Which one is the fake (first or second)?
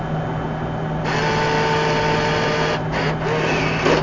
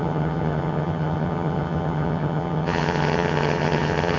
second